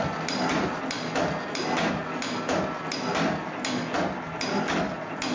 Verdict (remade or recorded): recorded